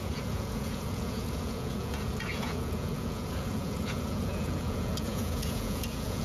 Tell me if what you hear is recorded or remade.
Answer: remade